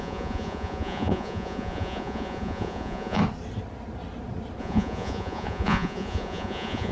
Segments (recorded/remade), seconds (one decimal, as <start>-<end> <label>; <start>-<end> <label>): 0.0-3.2 remade; 3.2-4.6 recorded; 4.6-6.9 remade